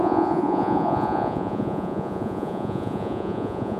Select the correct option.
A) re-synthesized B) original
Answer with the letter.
A